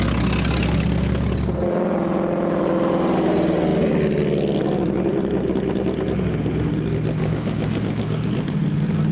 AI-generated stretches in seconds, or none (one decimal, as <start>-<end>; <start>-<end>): 7.2-8.3